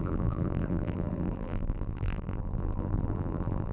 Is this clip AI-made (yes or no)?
yes